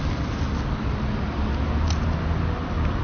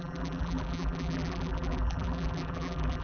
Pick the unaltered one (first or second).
first